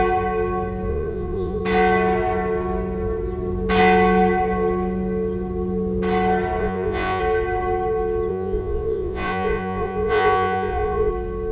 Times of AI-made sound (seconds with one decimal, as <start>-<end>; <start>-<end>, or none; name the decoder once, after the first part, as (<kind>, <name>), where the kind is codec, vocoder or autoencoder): 0.9-1.6 (vocoder, Vocos); 6.6-7.2; 8.3-11.1